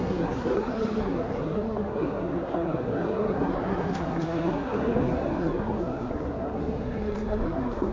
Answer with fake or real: fake